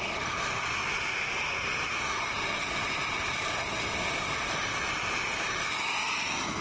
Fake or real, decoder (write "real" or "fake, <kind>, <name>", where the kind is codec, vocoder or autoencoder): real